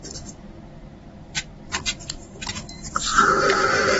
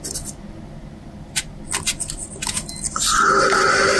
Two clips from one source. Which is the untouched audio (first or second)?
second